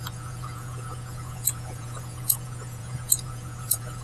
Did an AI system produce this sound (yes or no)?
yes